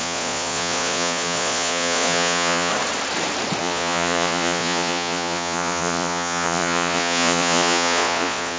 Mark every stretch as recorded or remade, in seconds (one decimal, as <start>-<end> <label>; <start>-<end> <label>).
0.0-2.7 remade; 2.7-3.6 recorded; 3.6-8.6 remade